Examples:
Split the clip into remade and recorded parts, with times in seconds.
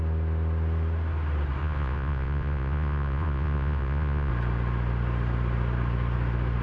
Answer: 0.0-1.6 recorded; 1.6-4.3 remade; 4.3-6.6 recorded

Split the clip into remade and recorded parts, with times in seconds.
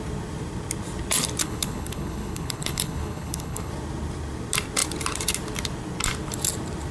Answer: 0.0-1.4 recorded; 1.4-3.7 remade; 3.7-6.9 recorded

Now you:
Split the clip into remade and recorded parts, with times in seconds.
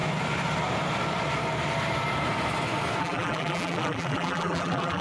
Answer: 0.0-3.0 recorded; 3.0-5.0 remade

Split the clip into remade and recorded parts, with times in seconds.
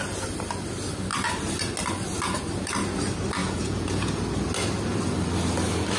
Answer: 0.0-3.4 recorded; 3.4-4.2 remade; 4.2-6.0 recorded